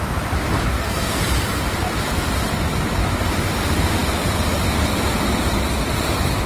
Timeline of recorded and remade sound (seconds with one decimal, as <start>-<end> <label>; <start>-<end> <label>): 0.0-0.7 recorded; 0.7-1.2 remade; 1.2-6.5 recorded